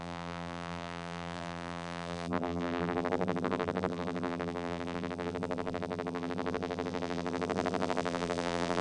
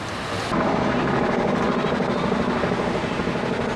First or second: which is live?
second